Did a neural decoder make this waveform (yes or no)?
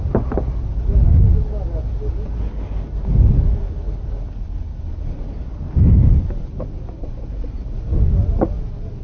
no